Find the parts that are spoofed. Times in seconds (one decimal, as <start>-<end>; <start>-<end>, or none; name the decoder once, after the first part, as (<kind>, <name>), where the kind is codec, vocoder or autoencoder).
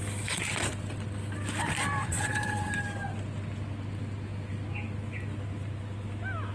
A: 2.1-2.7 (vocoder, WaveNeXt)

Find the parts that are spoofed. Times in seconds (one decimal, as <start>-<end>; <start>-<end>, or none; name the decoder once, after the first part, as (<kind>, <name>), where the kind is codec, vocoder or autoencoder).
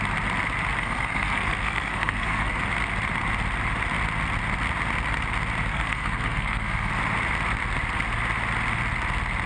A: 0.8-2.6 (codec, SNAC); 5.7-6.9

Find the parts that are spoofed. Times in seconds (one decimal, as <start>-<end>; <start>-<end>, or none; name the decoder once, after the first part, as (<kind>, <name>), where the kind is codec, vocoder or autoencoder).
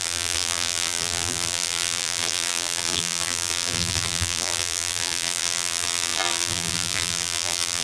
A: 0.0-7.8 (vocoder, BigVGAN v2)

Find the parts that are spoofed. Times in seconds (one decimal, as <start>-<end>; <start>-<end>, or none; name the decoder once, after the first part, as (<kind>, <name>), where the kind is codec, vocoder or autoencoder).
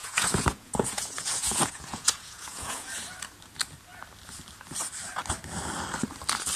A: 0.0-2.9 (vocoder, Vocos)